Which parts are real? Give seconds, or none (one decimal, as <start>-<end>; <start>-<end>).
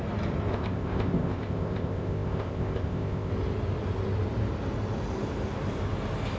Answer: 0.0-0.5; 3.3-6.4